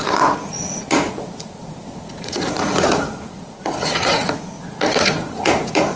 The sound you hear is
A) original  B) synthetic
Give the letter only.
B